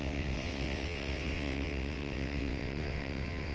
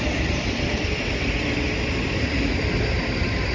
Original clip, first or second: second